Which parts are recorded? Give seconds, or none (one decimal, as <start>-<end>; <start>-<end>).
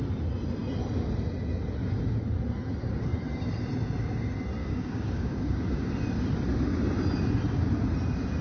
0.0-4.6; 5.9-8.4